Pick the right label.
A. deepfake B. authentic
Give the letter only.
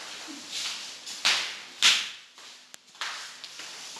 B